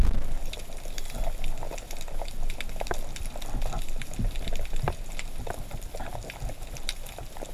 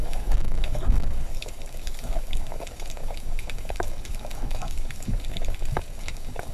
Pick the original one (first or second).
first